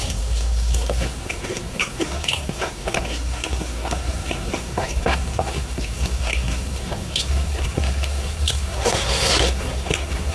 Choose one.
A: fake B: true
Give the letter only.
A